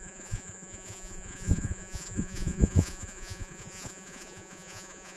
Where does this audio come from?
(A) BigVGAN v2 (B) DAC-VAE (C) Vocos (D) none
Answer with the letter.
C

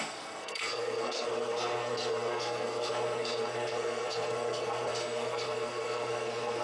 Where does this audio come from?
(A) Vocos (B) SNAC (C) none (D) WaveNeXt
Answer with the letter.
B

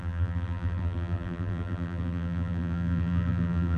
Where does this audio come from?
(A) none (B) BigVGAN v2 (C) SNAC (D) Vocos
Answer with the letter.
B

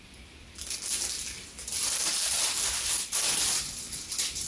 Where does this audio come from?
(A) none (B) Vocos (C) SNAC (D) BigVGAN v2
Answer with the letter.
A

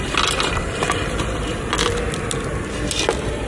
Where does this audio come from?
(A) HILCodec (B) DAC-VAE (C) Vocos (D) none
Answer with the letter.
D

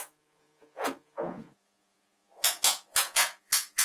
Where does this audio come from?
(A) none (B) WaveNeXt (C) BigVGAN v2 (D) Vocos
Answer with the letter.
D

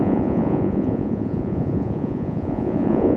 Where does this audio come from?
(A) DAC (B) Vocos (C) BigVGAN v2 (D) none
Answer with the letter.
B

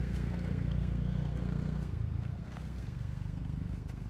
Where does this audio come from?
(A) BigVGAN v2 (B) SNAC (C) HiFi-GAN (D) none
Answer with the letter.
B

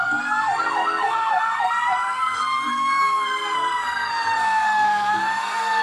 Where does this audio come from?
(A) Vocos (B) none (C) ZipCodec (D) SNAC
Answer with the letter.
D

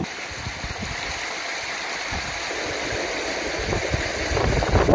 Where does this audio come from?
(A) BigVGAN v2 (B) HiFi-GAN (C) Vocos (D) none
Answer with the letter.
D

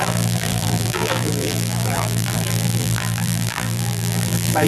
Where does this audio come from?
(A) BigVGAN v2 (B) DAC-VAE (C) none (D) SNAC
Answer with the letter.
A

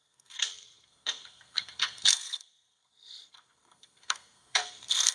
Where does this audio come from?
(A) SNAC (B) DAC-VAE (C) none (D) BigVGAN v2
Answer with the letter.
A